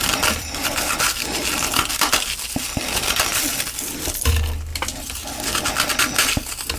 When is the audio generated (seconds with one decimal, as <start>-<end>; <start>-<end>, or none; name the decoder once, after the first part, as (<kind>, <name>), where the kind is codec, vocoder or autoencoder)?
0.4-1.6 (vocoder, BigVGAN v2); 3.3-4.3